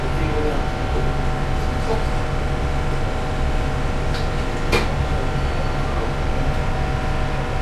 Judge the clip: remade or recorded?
recorded